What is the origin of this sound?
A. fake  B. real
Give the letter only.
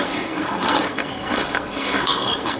A